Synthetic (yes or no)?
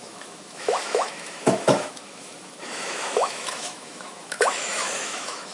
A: yes